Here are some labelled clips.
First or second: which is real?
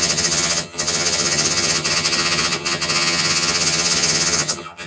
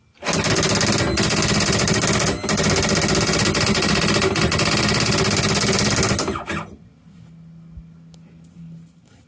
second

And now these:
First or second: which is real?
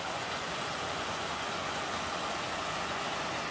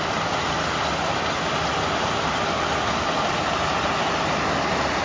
second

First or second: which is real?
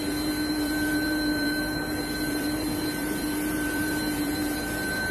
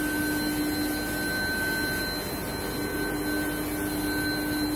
second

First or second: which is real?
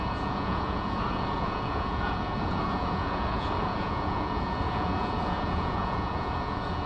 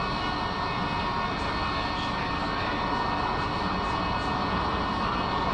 second